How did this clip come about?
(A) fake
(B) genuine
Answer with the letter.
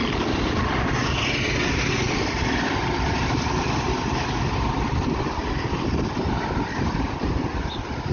B